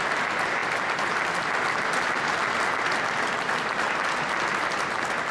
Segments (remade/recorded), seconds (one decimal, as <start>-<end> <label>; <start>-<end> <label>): 0.0-5.3 recorded